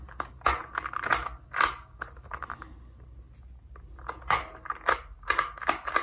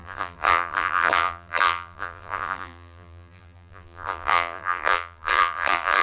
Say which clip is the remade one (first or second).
second